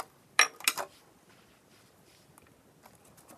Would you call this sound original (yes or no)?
yes